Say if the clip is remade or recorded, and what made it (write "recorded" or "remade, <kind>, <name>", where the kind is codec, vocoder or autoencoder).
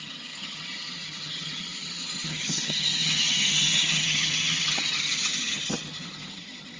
remade, vocoder, HiFi-GAN